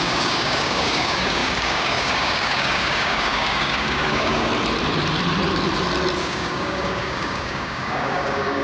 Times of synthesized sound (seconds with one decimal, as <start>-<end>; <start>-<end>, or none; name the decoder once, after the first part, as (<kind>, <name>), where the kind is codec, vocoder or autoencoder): 0.0-4.5 (codec, DAC); 6.2-8.6